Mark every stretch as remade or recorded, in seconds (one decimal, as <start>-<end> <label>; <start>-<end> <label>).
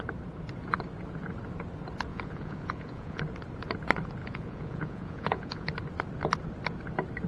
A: 0.0-2.1 recorded; 2.1-3.2 remade; 3.2-4.2 recorded; 4.2-5.7 remade; 5.7-7.3 recorded